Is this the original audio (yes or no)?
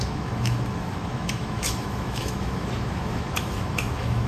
no